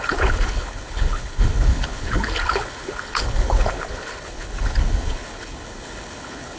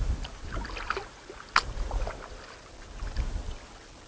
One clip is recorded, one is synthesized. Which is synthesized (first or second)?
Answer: first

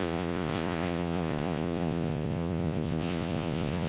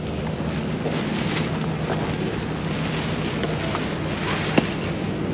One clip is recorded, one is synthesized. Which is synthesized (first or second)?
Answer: first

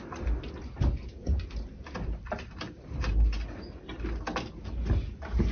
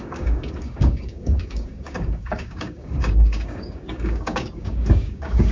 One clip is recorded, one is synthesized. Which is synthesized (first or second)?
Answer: second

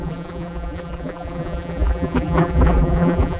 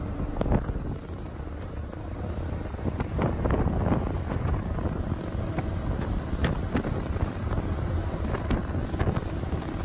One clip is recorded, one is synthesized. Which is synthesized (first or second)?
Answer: first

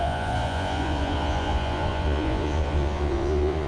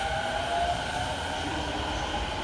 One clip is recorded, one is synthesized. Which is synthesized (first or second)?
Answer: first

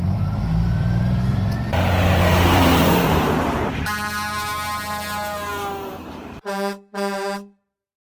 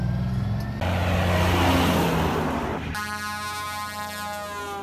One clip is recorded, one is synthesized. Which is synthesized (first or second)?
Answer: first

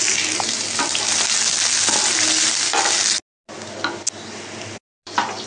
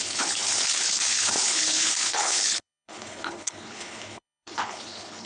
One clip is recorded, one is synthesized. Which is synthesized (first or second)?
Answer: second